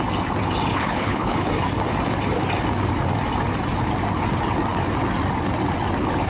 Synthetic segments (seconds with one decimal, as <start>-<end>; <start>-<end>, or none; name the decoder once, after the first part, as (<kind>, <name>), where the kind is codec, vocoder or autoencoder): 0.7-1.5 (codec, HILCodec)